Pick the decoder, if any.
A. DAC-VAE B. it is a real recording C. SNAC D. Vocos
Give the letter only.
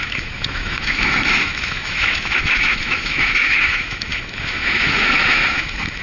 A